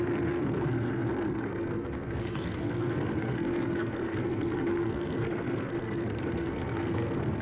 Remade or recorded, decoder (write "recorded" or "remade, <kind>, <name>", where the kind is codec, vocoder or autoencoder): remade, codec, SNAC